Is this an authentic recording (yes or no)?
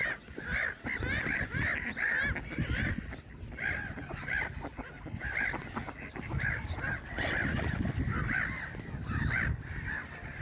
yes